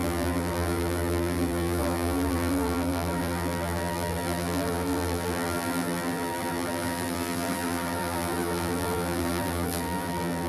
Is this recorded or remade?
remade